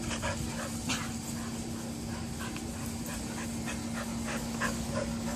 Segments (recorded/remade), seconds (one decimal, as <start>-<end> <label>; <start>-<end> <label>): 0.0-4.3 recorded; 4.3-5.4 remade